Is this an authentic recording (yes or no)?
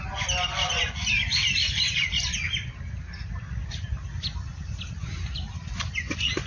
yes